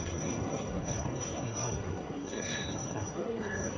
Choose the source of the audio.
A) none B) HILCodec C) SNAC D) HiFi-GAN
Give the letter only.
C